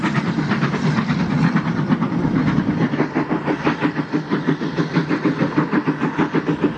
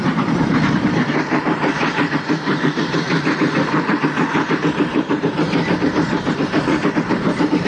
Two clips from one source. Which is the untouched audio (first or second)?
first